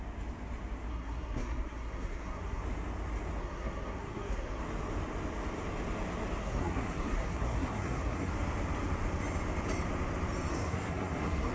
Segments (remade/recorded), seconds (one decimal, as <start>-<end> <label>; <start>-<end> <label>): 0.0-0.9 recorded; 0.9-2.6 remade; 2.6-3.4 recorded; 3.4-4.6 remade; 4.6-6.4 recorded; 6.4-8.3 remade; 8.3-10.5 recorded; 10.5-11.5 remade